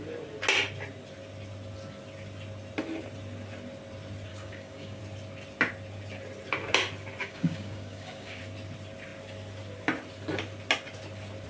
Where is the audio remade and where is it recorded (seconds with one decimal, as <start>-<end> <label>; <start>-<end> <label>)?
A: 0.0-4.3 recorded; 4.3-5.0 remade; 5.0-7.2 recorded; 7.2-8.4 remade; 8.4-11.5 recorded